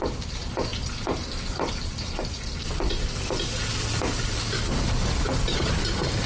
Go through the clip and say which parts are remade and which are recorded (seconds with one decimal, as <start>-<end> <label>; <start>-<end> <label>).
0.0-6.3 recorded